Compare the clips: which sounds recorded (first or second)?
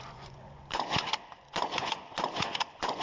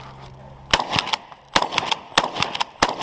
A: second